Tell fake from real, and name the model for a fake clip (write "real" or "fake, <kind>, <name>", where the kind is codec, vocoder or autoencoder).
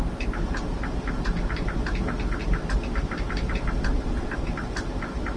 real